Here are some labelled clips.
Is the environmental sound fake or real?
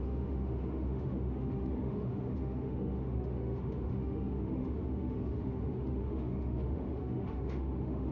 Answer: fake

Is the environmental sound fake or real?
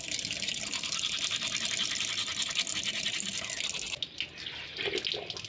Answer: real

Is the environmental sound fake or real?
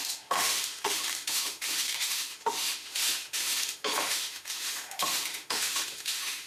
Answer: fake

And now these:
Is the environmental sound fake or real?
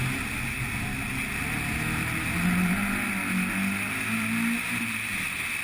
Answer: real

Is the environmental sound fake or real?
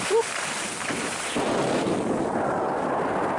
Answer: real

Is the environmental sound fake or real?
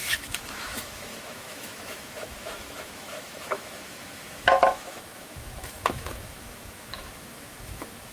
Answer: fake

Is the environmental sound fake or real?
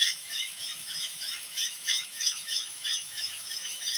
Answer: fake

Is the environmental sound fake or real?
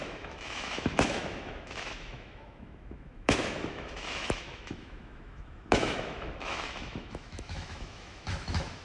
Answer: fake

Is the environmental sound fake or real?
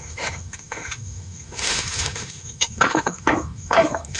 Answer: fake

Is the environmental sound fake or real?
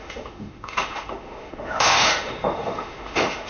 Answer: fake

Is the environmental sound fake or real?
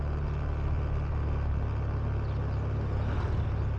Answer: real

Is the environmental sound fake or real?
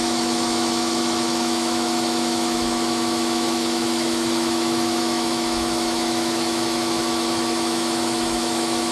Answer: fake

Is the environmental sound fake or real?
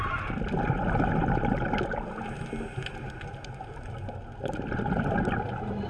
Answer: real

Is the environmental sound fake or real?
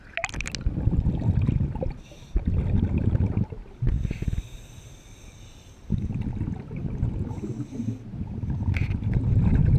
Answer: real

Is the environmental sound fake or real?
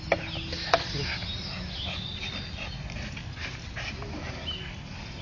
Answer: real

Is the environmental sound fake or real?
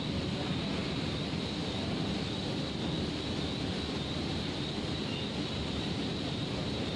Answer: real